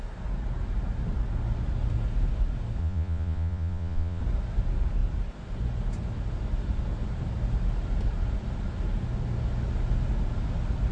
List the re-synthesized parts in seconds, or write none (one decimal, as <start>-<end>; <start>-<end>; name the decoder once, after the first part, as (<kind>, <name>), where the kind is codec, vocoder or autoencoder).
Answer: 2.8-4.2 (vocoder, Vocos)